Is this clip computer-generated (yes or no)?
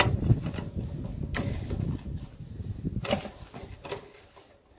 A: no